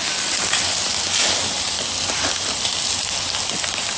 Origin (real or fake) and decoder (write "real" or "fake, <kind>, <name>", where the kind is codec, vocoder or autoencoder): real